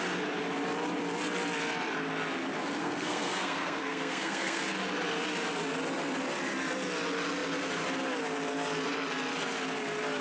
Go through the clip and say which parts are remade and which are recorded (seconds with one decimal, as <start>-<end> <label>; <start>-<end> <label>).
0.0-2.8 recorded; 2.8-4.6 remade; 4.6-10.2 recorded